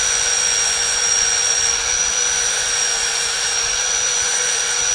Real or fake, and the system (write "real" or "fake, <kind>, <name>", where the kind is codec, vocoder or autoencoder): fake, vocoder, Vocos